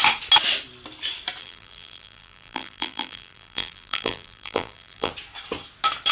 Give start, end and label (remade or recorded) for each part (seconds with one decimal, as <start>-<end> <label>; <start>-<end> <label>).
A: 0.0-1.4 recorded; 1.4-5.1 remade; 5.1-6.1 recorded